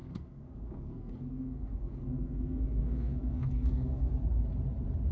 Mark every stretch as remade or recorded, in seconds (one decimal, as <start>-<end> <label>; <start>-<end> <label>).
0.0-4.1 remade; 4.1-5.1 recorded